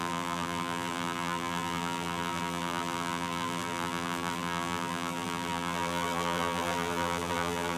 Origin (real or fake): fake